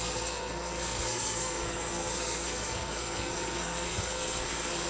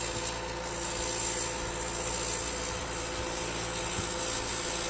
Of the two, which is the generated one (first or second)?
first